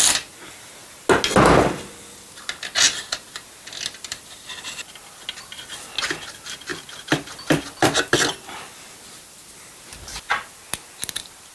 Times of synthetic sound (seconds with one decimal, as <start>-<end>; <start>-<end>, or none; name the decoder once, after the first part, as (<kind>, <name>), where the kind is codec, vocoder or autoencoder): none